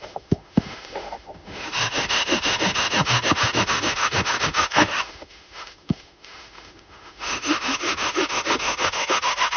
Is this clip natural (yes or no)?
no